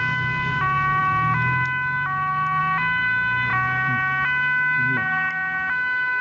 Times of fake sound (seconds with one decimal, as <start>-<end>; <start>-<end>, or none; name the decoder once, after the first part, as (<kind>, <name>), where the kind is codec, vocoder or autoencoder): none